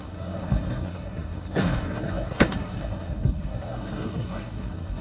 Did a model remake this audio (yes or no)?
yes